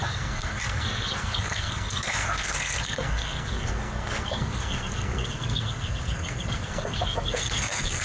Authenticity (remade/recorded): remade